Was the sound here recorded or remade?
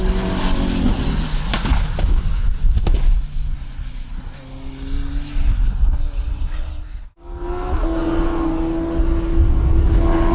recorded